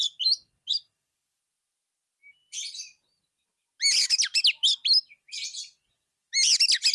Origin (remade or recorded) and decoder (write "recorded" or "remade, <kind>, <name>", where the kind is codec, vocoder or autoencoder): recorded